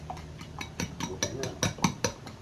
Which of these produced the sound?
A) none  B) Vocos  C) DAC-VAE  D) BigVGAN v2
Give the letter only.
A